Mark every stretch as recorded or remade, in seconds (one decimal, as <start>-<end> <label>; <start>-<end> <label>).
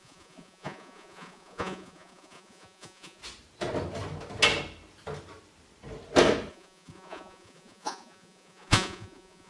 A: 0.0-3.2 remade; 3.2-6.5 recorded; 6.5-9.5 remade